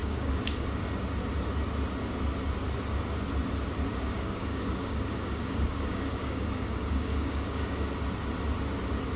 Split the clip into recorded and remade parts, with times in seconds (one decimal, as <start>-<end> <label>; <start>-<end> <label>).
0.0-0.8 remade; 0.8-3.9 recorded; 3.9-7.9 remade; 7.9-9.2 recorded